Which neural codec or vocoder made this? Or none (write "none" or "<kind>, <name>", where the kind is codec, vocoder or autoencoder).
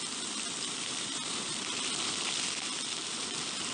vocoder, BigVGAN v2